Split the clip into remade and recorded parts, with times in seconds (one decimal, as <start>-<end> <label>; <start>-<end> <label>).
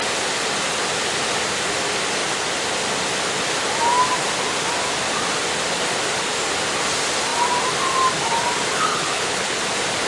0.0-8.9 recorded; 8.9-9.6 remade; 9.6-10.1 recorded